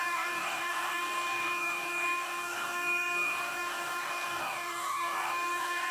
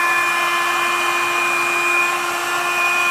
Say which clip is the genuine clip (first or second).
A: second